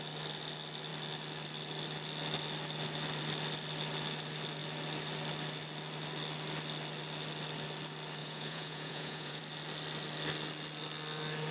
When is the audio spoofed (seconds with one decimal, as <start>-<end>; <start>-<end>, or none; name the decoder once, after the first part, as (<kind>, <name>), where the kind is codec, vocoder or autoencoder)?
8.2-9.4 (vocoder, Vocos)